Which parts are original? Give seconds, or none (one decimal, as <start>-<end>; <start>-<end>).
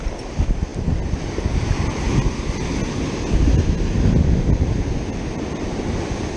0.0-6.4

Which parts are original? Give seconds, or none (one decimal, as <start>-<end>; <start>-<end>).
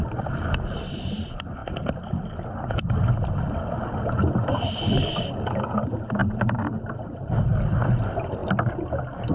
6.2-6.8; 8.4-9.3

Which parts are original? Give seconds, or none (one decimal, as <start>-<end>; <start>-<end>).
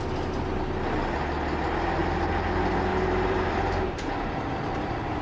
0.0-2.9